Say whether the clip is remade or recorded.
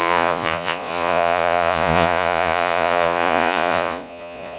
remade